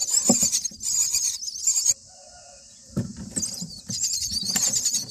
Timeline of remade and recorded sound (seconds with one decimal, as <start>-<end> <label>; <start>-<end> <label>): 0.0-5.1 remade